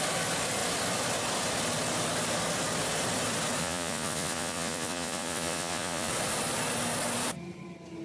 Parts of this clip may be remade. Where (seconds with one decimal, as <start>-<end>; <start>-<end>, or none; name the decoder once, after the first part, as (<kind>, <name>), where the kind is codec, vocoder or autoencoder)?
3.6-6.1 (vocoder, Vocos)

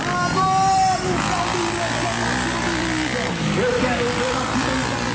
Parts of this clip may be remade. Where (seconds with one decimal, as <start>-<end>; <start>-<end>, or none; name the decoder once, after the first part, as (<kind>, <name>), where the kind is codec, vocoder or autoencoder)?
3.7-4.4 (vocoder, BigVGAN v2)

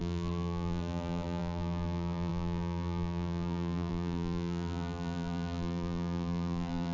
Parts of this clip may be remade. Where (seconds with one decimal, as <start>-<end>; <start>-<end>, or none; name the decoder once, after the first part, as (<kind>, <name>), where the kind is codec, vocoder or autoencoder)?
0.0-6.9 (vocoder, BigVGAN v2)

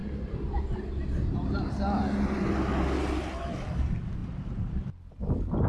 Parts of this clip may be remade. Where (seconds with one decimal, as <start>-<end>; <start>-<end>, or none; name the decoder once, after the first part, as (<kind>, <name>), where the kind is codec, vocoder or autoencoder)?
none